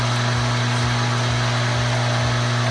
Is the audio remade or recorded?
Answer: recorded